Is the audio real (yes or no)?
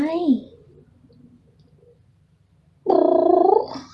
yes